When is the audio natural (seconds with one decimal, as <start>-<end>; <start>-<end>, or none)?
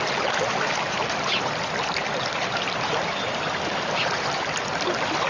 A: 0.0-5.3